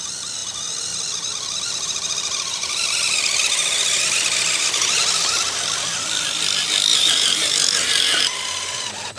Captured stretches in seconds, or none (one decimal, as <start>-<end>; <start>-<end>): 0.0-6.9; 8.2-9.2